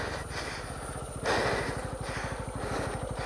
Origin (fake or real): real